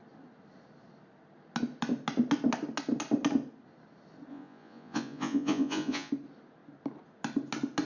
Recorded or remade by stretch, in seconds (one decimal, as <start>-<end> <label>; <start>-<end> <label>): 0.0-4.3 recorded; 4.3-6.1 remade; 6.1-7.8 recorded